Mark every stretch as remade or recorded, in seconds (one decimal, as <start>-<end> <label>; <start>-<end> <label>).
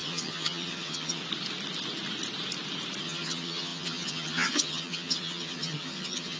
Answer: 0.0-1.2 remade; 1.2-3.0 recorded; 3.0-6.4 remade